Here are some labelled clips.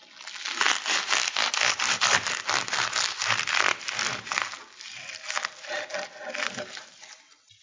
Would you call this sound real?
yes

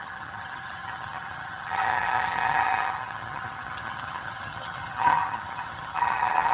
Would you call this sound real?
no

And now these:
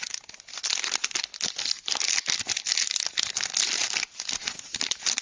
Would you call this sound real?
yes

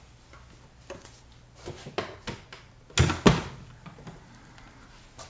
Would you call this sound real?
yes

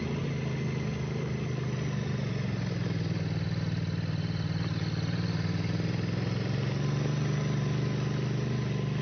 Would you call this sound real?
yes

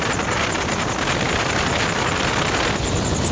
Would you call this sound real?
yes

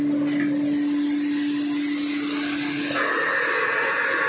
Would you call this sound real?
yes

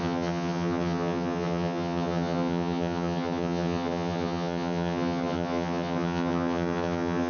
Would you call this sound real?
no